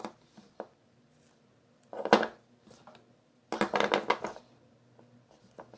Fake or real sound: real